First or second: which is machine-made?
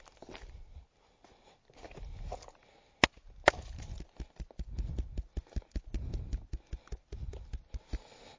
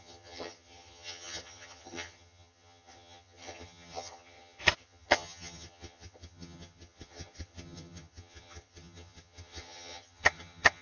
second